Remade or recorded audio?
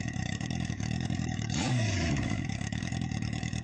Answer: remade